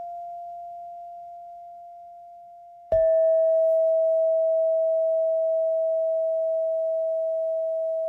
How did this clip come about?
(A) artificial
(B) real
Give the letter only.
A